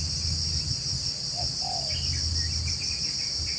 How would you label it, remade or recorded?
recorded